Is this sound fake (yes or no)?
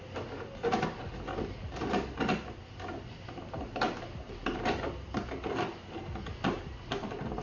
no